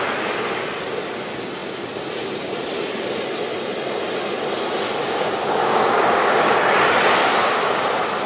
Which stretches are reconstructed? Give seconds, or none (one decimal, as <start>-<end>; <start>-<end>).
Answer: 5.0-6.5; 7.2-7.8